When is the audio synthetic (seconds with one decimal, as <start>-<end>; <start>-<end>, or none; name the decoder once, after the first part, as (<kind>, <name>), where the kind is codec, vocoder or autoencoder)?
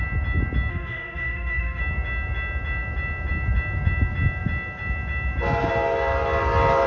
0.7-1.8 (autoencoder, DAC-VAE)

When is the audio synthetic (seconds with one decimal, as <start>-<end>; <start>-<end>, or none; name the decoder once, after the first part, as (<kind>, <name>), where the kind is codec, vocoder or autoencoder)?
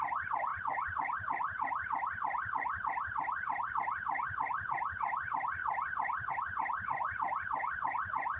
0.5-3.7 (vocoder, BigVGAN v2)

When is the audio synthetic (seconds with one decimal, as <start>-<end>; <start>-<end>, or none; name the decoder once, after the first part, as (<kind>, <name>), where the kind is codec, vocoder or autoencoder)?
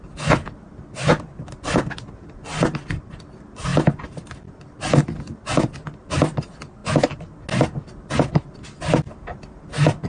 none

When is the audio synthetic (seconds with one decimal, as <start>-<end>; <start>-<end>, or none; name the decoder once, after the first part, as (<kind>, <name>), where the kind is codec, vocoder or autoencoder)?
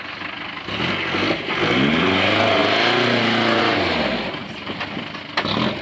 none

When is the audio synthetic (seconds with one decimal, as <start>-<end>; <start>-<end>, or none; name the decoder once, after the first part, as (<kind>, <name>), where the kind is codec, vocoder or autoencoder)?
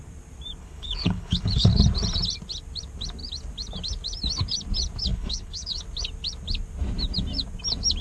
0.6-1.8 (codec, HILCodec); 5.1-5.8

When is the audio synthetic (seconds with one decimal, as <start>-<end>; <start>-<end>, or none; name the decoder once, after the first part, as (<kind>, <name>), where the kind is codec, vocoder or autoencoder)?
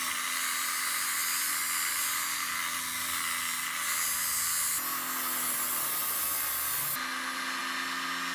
none